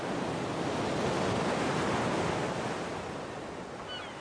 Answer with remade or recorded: recorded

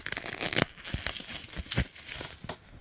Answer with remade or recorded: recorded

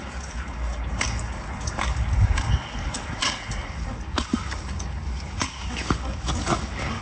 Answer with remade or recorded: remade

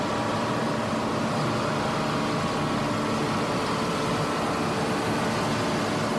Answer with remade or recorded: recorded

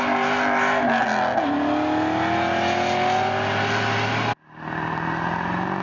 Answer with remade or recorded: recorded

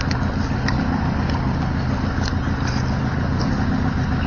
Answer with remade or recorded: recorded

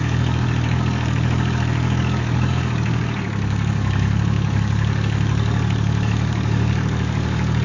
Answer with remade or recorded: remade